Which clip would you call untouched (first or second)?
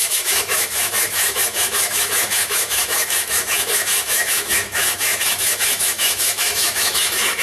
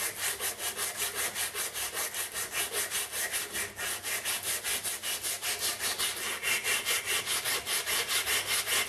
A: second